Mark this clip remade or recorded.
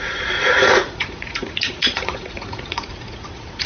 remade